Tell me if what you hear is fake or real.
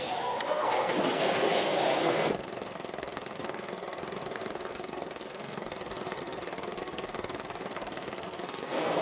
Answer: fake